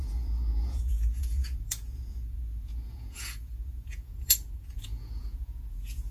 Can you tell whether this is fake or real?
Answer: fake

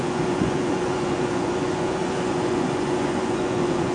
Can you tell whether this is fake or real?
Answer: fake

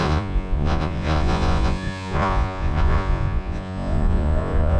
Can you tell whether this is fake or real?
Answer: fake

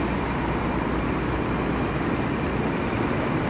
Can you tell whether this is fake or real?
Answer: real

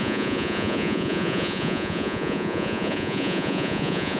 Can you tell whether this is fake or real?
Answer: fake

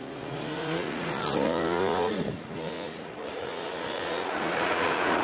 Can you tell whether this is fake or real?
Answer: fake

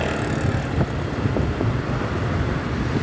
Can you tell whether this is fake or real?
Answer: real